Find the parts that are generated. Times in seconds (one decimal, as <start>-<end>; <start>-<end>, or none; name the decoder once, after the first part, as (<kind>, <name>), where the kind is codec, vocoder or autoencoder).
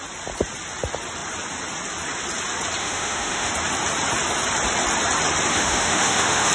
2.8-3.5 (autoencoder, DAC-VAE); 5.5-6.5